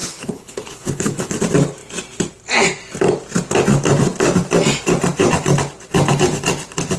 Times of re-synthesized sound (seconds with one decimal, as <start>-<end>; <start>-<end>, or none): 0.0-1.4